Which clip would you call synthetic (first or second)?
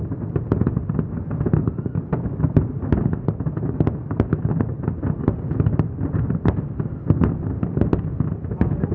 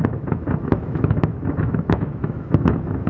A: second